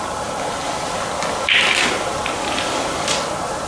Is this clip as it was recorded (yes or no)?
yes